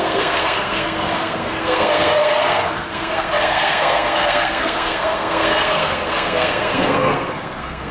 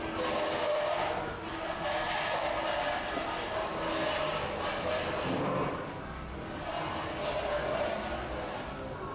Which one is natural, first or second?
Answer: second